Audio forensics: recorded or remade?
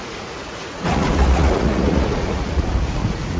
remade